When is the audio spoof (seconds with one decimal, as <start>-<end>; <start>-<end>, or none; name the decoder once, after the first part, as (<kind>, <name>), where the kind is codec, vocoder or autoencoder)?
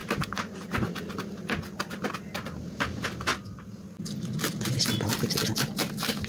0.0-0.7 (vocoder, BigVGAN v2)